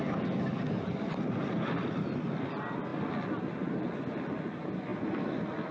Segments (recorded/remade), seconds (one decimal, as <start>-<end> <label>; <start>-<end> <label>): 0.0-5.7 recorded